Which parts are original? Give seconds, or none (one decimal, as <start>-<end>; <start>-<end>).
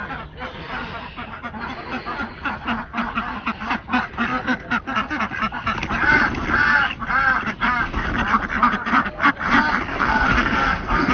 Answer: 0.0-9.9